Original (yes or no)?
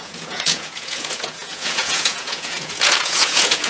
no